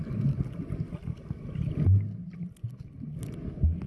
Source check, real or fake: real